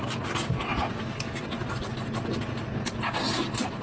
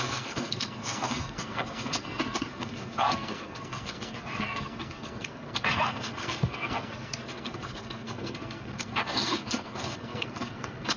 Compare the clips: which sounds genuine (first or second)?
first